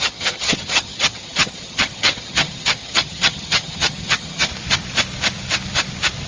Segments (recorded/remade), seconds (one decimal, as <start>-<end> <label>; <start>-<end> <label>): 0.0-4.5 remade; 4.5-6.3 recorded